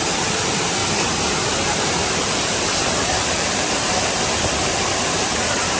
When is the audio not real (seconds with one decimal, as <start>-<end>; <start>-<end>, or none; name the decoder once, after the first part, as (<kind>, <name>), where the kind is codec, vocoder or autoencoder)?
0.0-0.8 (vocoder, BigVGAN v2); 1.4-5.8

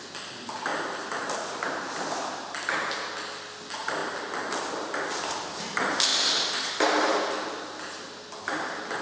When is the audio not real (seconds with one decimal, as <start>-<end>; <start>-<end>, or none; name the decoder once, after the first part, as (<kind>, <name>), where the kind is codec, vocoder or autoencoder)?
none